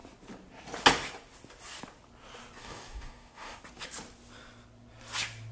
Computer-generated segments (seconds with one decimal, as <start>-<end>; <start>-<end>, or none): 2.6-3.6